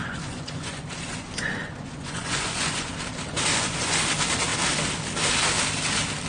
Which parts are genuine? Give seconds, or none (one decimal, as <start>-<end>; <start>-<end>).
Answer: 2.9-3.5; 4.0-6.3